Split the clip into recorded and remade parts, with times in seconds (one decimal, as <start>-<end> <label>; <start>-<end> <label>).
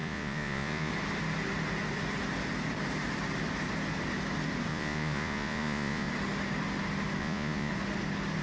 0.0-0.9 remade; 0.9-4.7 recorded; 4.7-6.1 remade; 6.1-7.2 recorded; 7.2-7.7 remade; 7.7-8.4 recorded